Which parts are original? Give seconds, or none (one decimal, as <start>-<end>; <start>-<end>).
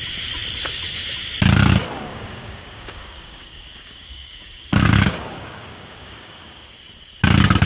0.0-2.1; 6.7-7.7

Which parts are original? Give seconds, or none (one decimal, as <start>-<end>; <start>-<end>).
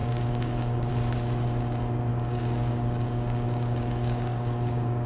0.9-2.1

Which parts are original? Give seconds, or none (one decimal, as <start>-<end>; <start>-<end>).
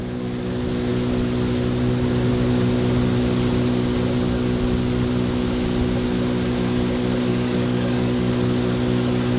0.0-7.3; 8.3-9.4